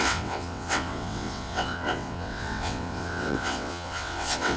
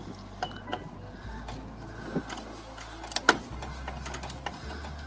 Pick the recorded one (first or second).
second